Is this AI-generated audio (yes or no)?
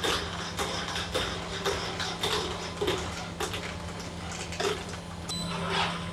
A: no